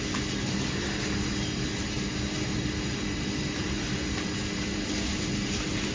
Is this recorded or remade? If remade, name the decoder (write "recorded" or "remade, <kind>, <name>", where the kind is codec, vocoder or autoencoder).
recorded